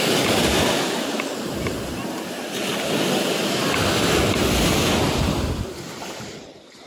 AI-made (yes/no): no